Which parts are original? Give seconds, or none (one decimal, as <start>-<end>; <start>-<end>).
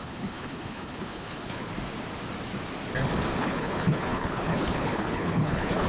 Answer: 1.7-3.4